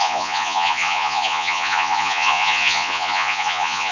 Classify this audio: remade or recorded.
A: remade